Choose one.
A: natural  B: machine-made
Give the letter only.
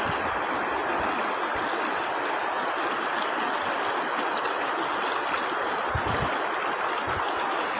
A